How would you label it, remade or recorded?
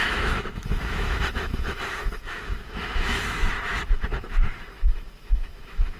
remade